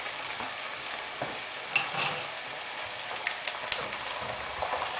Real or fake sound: real